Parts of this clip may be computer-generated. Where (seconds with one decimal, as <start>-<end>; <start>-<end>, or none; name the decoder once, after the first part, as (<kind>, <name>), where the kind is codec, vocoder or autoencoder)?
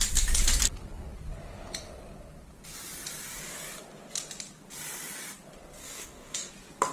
5.8-6.5 (codec, DAC)